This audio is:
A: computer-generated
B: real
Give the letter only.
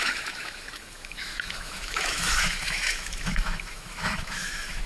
A